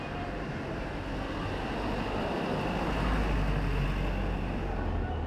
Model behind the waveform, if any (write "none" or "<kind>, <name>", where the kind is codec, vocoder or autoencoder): none